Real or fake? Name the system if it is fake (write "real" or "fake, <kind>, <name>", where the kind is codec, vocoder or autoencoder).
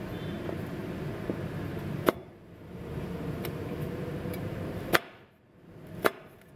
real